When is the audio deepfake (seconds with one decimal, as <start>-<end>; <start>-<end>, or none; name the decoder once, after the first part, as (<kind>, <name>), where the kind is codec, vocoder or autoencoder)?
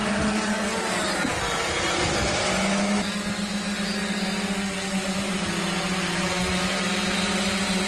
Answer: none